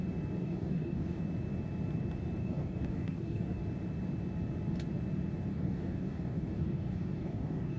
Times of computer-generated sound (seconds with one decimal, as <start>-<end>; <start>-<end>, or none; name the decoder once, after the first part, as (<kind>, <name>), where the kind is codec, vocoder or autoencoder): 0.4-1.2 (codec, DAC); 2.4-3.6; 5.5-7.8